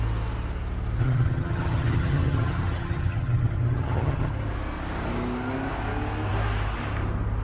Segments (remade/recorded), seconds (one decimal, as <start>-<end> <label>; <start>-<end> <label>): 0.0-1.0 recorded; 1.0-4.3 remade; 4.3-7.4 recorded